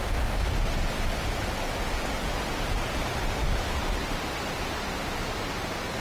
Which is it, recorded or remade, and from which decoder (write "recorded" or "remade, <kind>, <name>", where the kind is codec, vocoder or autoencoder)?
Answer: recorded